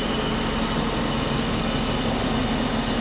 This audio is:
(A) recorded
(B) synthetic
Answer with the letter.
A